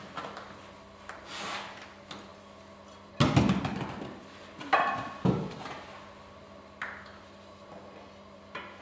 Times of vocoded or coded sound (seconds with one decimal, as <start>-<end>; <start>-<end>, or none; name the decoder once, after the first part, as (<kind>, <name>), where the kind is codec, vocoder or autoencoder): none